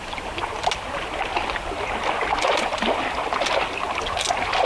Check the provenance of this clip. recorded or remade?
recorded